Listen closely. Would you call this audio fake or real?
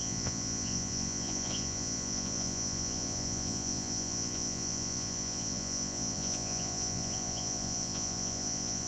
fake